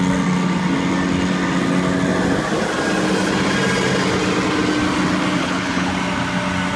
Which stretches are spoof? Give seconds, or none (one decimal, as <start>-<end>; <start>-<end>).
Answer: 5.4-5.9